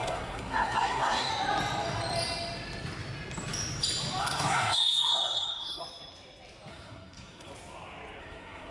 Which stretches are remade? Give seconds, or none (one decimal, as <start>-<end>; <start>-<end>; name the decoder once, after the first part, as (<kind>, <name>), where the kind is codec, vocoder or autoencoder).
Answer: 0.0-1.3 (codec, SNAC); 4.2-5.8; 6.7-7.5; 8.2-8.7